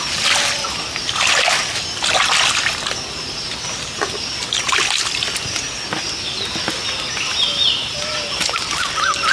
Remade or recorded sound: recorded